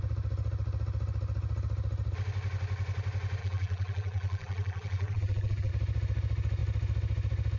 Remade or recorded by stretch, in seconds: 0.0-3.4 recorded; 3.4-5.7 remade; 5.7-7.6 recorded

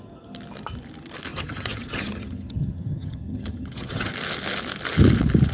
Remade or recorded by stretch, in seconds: 0.0-1.3 recorded; 1.3-4.1 remade; 4.1-5.5 recorded

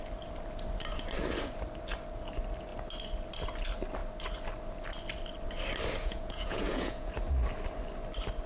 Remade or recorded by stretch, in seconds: 0.0-6.0 recorded; 6.0-7.1 remade; 7.1-8.5 recorded